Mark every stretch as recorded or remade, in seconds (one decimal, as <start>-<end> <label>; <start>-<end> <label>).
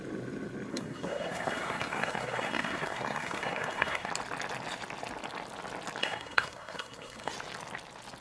0.0-0.7 recorded; 0.7-4.1 remade; 4.1-6.0 recorded; 6.0-7.3 remade; 7.3-8.2 recorded